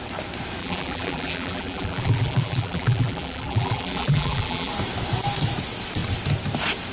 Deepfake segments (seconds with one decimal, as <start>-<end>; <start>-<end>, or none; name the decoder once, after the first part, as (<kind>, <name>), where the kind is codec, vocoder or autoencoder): 0.6-4.7 (vocoder, BigVGAN v2)